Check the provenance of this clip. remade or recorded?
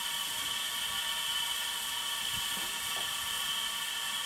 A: recorded